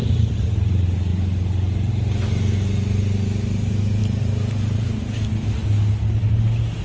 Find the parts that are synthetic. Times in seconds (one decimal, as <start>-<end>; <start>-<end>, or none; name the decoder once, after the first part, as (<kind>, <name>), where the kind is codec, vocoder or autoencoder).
4.0-5.0 (vocoder, BigVGAN v2)